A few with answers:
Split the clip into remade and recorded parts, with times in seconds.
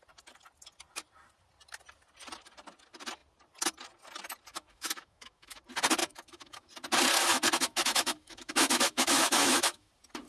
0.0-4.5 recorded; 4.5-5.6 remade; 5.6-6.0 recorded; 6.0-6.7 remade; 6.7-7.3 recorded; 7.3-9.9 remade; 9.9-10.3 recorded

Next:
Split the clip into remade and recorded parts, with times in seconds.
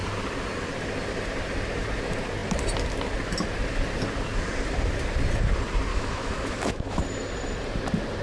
0.0-5.9 recorded; 5.9-7.0 remade; 7.0-8.2 recorded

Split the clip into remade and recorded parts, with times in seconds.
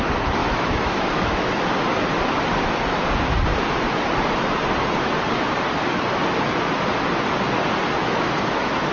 0.0-0.4 recorded; 0.4-1.5 remade; 1.5-8.0 recorded; 8.0-8.9 remade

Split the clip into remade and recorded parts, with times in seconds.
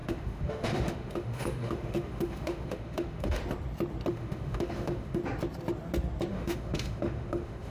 0.0-3.4 remade; 3.4-4.1 recorded; 4.1-5.2 remade; 5.2-6.3 recorded; 6.3-7.7 remade